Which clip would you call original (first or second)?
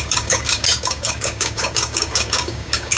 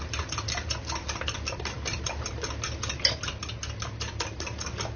second